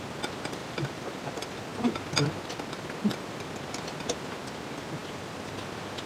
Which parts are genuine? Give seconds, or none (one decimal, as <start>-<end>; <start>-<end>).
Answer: 0.0-0.6; 1.1-5.0; 5.5-6.1